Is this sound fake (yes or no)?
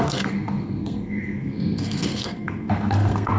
yes